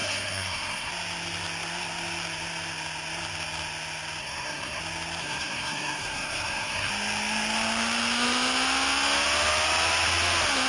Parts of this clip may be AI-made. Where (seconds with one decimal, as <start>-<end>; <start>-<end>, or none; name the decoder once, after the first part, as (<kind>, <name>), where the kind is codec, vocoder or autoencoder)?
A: 0.0-0.9 (codec, SNAC); 4.2-4.8; 5.2-6.9